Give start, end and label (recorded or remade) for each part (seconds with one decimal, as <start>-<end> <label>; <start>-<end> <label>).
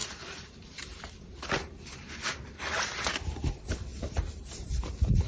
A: 0.0-3.1 remade; 3.1-3.9 recorded; 3.9-5.3 remade